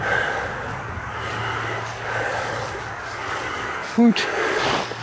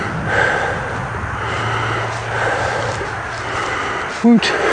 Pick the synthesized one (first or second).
first